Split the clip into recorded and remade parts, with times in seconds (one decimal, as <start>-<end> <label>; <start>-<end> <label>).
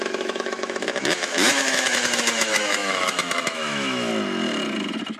0.0-4.1 remade; 4.1-5.2 recorded